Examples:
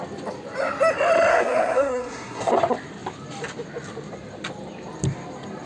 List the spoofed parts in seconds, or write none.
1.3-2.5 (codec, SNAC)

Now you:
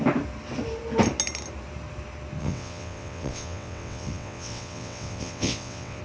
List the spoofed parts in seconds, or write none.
2.4-6.0 (vocoder, WaveNeXt)

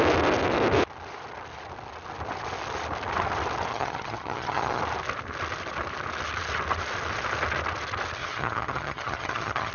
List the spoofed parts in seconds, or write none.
3.7-4.8 (vocoder, HiFi-GAN); 8.2-9.7

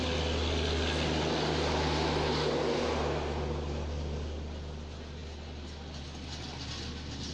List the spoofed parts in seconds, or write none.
none